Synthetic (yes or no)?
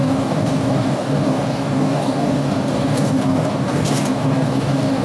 yes